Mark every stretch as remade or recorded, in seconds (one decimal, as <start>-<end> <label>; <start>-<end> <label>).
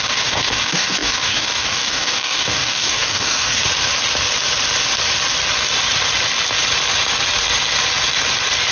0.0-3.6 remade; 3.6-8.7 recorded